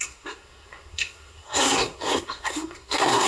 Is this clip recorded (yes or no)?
no